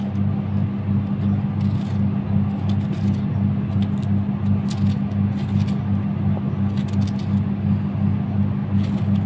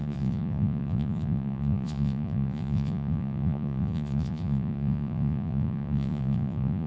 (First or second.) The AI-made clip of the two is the second